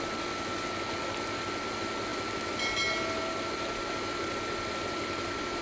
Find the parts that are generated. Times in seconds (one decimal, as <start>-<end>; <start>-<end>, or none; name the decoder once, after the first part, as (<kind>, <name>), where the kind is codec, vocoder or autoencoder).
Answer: none